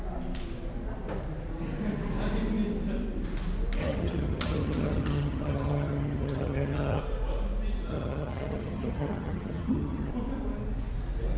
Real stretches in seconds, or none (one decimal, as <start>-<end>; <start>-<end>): 0.0-3.8; 7.0-7.9; 10.1-11.4